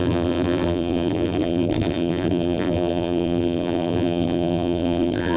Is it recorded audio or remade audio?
remade